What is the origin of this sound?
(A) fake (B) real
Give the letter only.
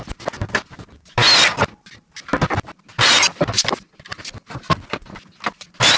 B